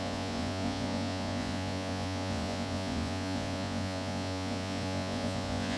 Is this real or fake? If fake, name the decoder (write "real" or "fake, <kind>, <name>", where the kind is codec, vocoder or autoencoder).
fake, vocoder, Vocos